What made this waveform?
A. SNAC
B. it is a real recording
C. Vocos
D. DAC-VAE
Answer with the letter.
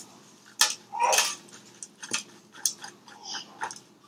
B